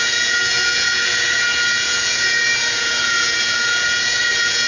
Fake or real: fake